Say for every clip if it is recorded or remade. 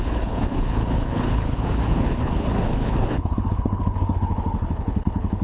remade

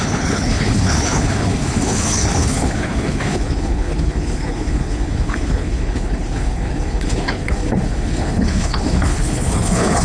remade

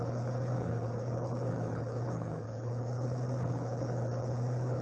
remade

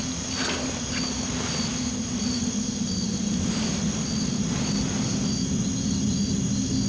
recorded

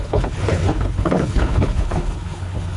remade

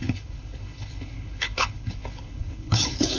remade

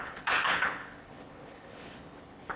remade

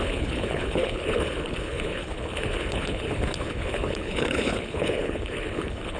remade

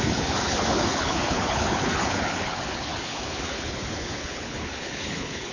remade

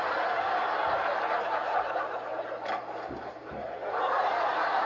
recorded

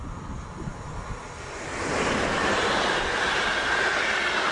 recorded